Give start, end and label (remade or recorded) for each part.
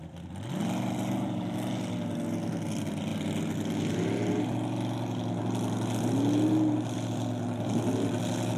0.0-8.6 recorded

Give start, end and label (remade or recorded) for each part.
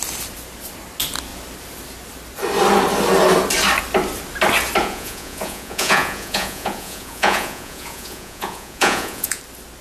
0.0-4.8 recorded; 4.8-9.4 remade; 9.4-9.8 recorded